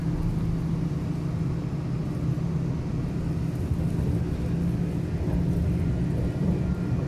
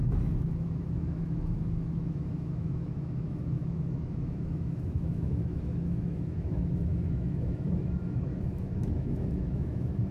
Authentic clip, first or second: first